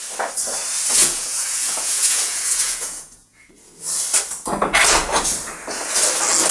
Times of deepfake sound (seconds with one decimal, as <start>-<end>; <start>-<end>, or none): 1.0-3.5